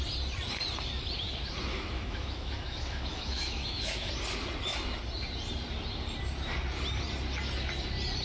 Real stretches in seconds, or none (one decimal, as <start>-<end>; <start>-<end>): 0.0-1.7; 4.1-8.2